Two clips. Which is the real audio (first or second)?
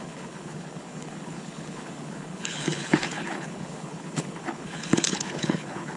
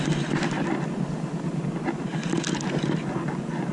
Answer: second